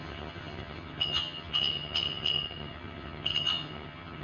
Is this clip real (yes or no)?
no